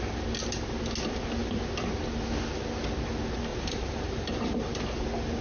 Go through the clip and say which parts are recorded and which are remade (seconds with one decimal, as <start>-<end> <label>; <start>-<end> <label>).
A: 0.0-3.5 recorded; 3.5-4.7 remade; 4.7-5.4 recorded